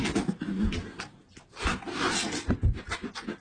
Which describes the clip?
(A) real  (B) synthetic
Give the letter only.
A